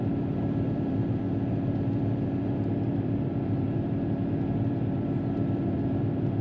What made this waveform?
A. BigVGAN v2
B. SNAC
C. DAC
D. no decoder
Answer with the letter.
A